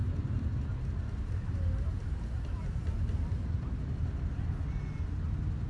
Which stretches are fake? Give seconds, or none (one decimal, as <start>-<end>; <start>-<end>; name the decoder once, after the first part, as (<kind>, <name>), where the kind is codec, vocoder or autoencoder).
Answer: none